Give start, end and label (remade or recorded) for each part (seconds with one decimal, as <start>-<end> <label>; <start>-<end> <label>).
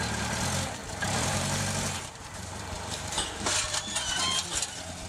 0.0-0.8 recorded; 0.8-3.9 remade; 3.9-5.1 recorded